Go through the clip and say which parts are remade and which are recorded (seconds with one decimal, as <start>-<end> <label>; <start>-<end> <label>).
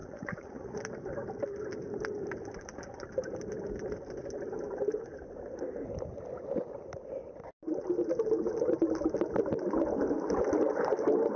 0.0-0.8 remade; 0.8-11.4 recorded